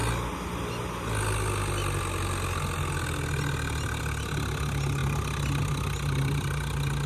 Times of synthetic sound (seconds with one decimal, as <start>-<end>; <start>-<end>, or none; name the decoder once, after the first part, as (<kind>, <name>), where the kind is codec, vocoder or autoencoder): none